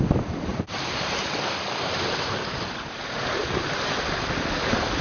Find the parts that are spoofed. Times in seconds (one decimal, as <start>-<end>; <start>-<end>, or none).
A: 0.5-1.4